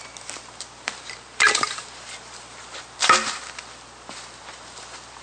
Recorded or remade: remade